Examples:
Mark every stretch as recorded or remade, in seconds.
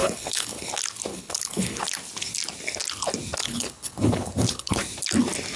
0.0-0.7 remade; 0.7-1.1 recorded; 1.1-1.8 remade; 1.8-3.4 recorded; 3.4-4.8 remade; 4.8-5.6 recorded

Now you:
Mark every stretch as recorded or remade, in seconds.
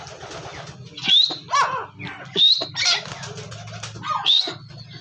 0.0-5.0 recorded